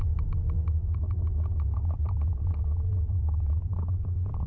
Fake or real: real